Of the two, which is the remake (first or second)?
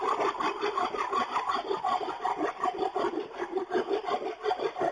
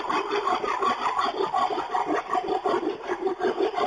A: first